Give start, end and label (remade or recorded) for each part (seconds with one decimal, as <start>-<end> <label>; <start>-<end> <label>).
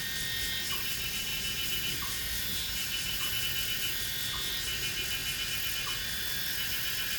0.0-1.3 recorded; 1.3-3.4 remade; 3.4-7.2 recorded